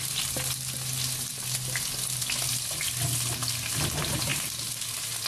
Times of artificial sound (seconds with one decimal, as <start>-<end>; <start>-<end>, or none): 1.3-2.5